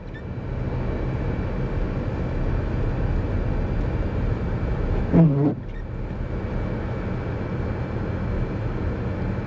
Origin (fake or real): real